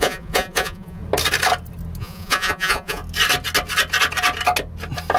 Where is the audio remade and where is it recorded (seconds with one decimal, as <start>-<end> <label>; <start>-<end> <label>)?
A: 0.0-1.0 remade; 1.0-2.0 recorded; 2.0-3.0 remade; 3.0-5.2 recorded